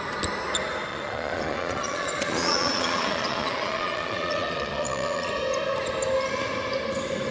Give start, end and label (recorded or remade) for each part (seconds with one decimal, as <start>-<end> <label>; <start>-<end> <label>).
0.0-0.9 recorded; 0.9-5.3 remade; 5.3-7.3 recorded